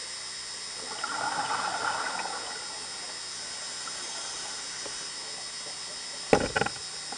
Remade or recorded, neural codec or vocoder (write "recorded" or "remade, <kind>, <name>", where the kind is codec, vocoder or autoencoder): recorded